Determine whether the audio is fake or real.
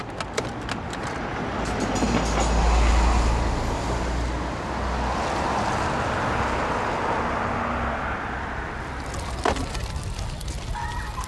real